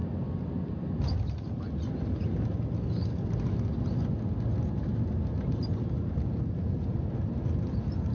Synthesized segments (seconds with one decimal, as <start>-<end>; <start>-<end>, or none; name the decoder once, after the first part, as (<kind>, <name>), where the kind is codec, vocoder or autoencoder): none